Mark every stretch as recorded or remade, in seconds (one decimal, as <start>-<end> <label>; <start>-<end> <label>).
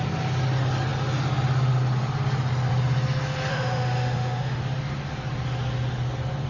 0.0-3.5 recorded; 3.5-4.6 remade; 4.6-6.5 recorded